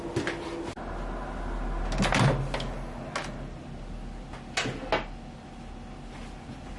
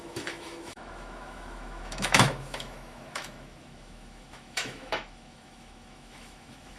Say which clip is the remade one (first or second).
second